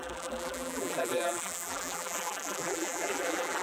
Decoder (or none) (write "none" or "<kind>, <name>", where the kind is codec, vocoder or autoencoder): vocoder, BigVGAN v2